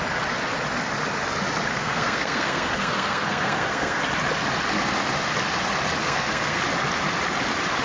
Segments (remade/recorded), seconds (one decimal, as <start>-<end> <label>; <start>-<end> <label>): 0.0-1.7 recorded; 1.7-4.0 remade; 4.0-6.0 recorded; 6.0-6.6 remade; 6.6-7.8 recorded